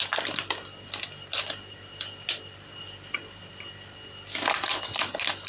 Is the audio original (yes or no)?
yes